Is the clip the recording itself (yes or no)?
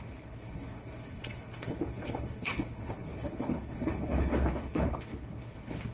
no